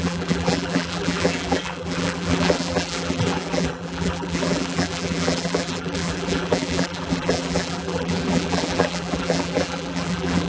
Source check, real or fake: fake